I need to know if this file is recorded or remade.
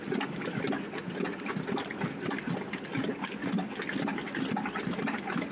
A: recorded